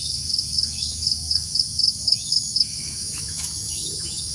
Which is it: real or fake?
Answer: fake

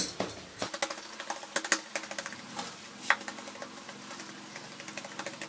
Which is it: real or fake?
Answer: real